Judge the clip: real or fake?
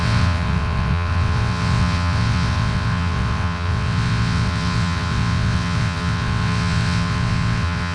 fake